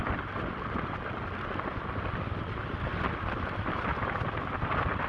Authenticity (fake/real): real